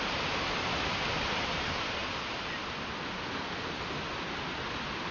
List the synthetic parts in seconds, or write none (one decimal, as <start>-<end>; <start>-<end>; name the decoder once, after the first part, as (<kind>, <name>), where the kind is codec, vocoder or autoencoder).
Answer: none